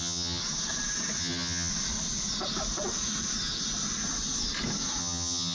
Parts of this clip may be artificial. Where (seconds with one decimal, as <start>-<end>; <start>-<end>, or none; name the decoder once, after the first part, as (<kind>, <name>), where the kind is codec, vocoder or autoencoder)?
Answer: 0.0-0.4 (vocoder, HiFi-GAN); 1.2-1.7; 5.0-5.5